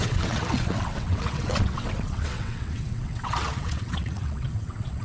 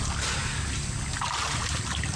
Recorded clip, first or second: second